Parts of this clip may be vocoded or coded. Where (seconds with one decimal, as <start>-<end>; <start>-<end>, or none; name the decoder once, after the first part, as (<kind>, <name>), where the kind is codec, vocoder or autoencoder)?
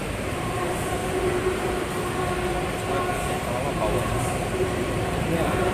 0.0-1.0 (vocoder, BigVGAN v2); 4.2-5.7